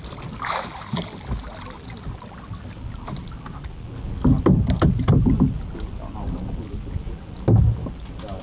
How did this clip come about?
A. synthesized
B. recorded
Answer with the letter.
B